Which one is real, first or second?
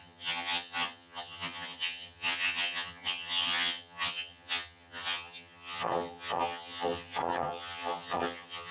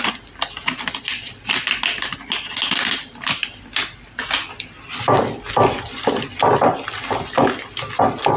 second